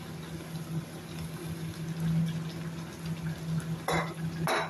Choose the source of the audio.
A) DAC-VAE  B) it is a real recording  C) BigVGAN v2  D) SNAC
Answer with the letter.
B